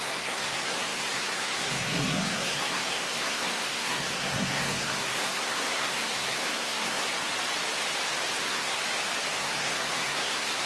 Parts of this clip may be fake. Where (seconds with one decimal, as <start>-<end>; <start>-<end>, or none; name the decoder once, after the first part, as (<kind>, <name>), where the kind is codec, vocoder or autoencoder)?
0.0-7.1 (codec, SNAC); 8.4-8.8; 9.4-10.7